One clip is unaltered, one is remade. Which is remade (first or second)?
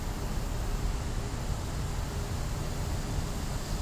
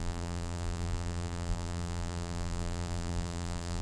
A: second